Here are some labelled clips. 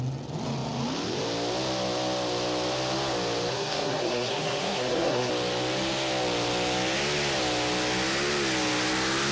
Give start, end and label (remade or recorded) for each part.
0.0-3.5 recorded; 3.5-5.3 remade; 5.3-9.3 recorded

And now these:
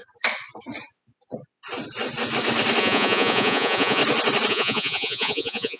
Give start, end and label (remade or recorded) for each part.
0.0-2.8 recorded; 2.8-4.0 remade; 4.0-4.5 recorded; 4.5-5.8 remade

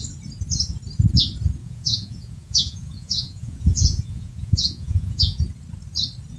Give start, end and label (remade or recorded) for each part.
0.0-1.6 recorded; 1.6-5.4 remade; 5.4-6.4 recorded

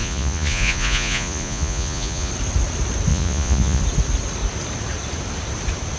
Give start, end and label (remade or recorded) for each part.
0.0-2.3 remade; 2.3-3.1 recorded; 3.1-3.8 remade; 3.8-6.0 recorded